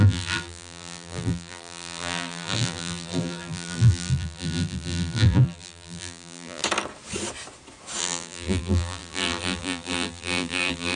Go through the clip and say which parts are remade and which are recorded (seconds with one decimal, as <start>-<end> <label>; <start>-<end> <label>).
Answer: 0.0-6.6 remade; 6.6-8.0 recorded; 8.0-11.0 remade